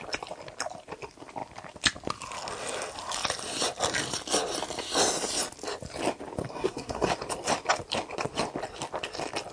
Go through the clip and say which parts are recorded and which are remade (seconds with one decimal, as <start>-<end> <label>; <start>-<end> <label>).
0.0-6.4 recorded; 6.4-7.1 remade; 7.1-9.5 recorded